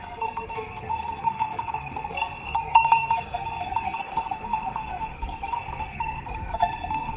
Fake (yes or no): yes